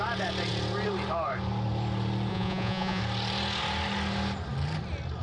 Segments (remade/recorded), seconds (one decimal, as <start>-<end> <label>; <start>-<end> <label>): 0.0-2.3 recorded; 2.3-3.0 remade; 3.0-5.2 recorded